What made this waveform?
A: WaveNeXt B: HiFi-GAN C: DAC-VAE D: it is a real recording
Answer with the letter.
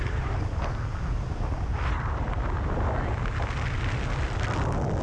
D